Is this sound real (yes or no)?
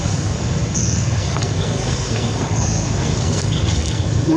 no